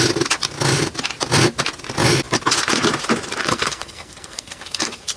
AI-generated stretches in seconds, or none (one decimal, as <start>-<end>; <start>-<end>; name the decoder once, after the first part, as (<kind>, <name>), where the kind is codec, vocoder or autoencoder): 3.4-5.2 (codec, SNAC)